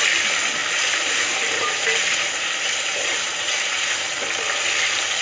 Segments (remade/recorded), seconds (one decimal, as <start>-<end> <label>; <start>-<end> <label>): 0.0-0.6 recorded; 0.6-3.7 remade; 3.7-5.2 recorded